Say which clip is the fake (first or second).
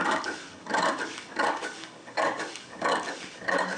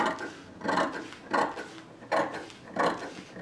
first